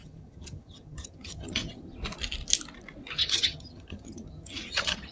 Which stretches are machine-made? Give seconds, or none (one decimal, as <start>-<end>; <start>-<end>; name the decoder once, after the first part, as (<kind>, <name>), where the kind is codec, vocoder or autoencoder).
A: 0.0-1.9 (vocoder, HiFi-GAN); 3.2-5.1